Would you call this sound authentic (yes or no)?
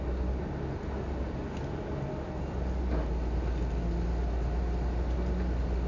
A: yes